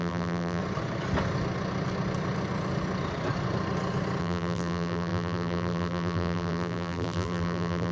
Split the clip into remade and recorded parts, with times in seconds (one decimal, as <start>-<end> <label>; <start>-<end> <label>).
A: 0.0-0.6 remade; 0.6-4.2 recorded; 4.2-7.9 remade

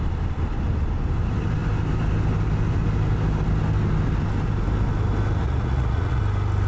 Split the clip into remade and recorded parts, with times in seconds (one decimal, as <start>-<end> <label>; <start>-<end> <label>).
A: 0.0-5.4 recorded; 5.4-6.2 remade; 6.2-6.7 recorded

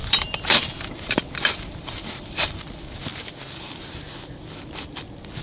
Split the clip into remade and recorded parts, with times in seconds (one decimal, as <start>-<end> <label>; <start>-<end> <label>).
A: 0.0-2.6 remade; 2.6-5.4 recorded

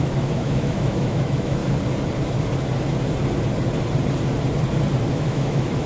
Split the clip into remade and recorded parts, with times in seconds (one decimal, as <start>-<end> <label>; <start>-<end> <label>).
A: 0.0-1.6 remade; 1.6-5.1 recorded; 5.1-5.9 remade

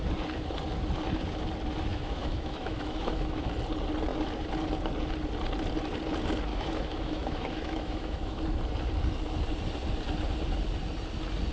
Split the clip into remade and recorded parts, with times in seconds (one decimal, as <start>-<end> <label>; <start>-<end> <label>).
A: 0.0-1.9 recorded; 1.9-3.5 remade; 3.5-6.5 recorded; 6.5-8.4 remade; 8.4-11.5 recorded

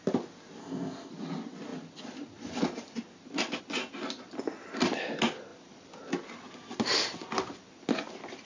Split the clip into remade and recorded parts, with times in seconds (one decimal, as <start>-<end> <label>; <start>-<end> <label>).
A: 0.0-0.6 recorded; 0.6-1.1 remade; 1.1-8.5 recorded